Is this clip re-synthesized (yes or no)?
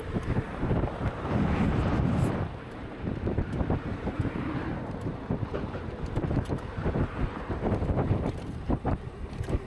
yes